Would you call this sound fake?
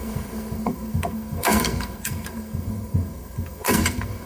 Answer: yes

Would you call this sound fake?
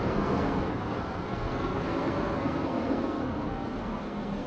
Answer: yes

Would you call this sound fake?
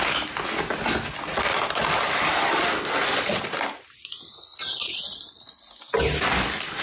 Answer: no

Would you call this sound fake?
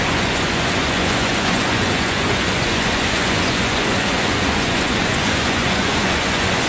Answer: yes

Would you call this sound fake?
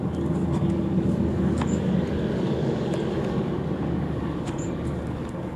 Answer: yes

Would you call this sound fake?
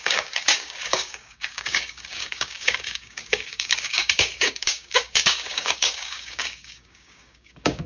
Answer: yes